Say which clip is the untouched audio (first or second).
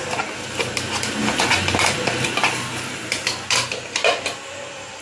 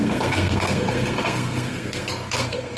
first